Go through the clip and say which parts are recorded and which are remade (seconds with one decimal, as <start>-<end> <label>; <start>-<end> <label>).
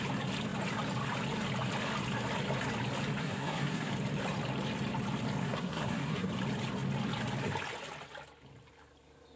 0.0-3.2 recorded; 3.2-3.9 remade; 3.9-5.4 recorded; 5.4-6.3 remade; 6.3-9.4 recorded